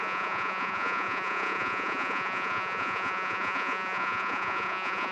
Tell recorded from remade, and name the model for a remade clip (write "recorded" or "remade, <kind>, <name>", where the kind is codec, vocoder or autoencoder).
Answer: remade, vocoder, Vocos